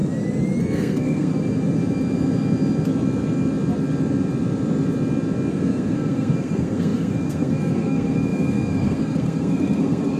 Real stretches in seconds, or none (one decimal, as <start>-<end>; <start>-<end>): 0.0-0.6; 1.3-5.5